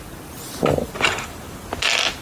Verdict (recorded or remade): recorded